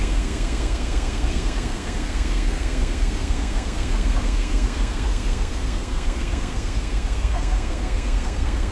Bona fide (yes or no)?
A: no